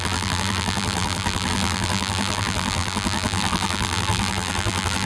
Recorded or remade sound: remade